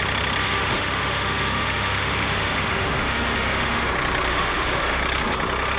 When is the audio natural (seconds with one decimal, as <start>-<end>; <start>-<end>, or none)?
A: 0.0-0.4; 3.9-4.3; 5.0-5.8